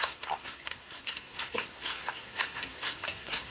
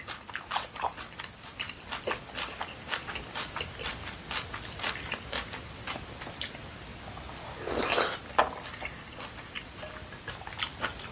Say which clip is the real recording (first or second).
second